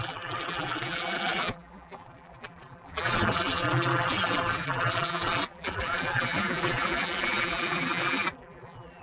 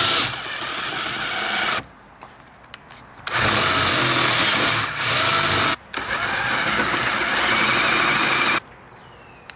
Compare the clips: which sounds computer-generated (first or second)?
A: first